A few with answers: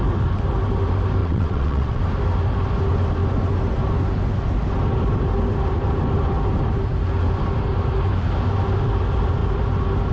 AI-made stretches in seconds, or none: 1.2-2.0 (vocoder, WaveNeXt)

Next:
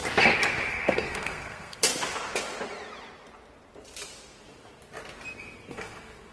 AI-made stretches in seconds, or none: 0.7-1.9 (codec, SNAC); 5.7-6.3

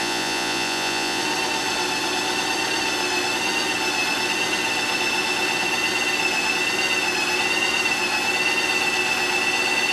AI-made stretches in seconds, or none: 0.0-1.2 (vocoder, Vocos)

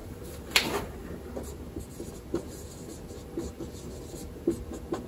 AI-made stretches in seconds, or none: none

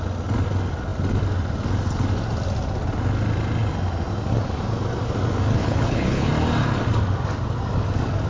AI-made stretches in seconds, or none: 5.6-6.3 (codec, HILCodec)